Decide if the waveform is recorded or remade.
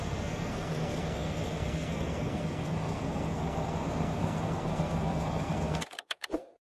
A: remade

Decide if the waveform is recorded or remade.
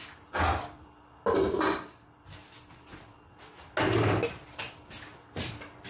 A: recorded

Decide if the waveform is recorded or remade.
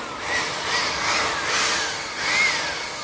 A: recorded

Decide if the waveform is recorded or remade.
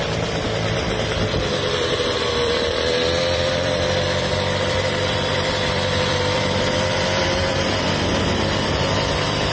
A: remade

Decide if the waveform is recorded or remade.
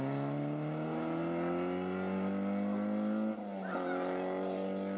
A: recorded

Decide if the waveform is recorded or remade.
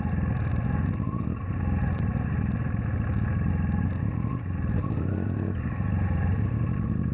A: recorded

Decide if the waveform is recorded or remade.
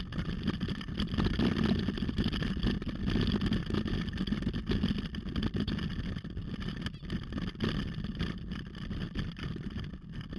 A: recorded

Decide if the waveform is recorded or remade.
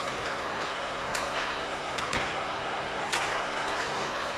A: remade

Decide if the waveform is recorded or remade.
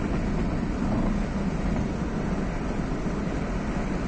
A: recorded